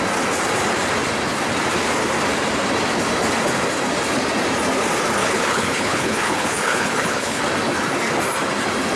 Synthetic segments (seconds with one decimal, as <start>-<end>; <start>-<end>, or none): 5.2-7.4